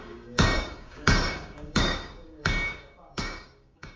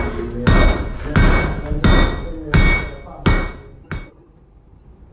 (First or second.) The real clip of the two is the second